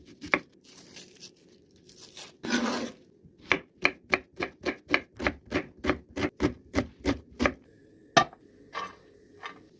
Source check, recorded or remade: recorded